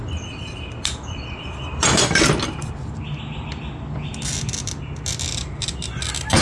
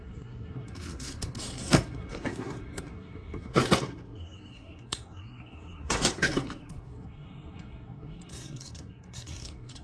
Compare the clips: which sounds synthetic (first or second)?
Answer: second